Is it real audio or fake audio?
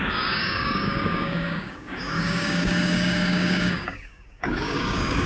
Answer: fake